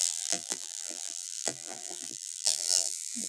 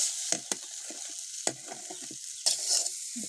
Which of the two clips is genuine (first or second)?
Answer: second